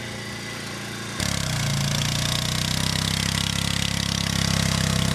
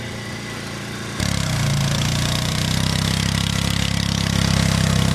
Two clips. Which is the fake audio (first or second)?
second